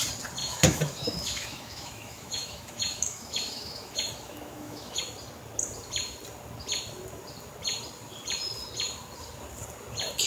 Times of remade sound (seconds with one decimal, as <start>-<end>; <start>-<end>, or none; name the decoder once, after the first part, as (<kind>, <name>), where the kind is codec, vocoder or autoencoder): 0.4-5.0 (autoencoder, DAC-VAE)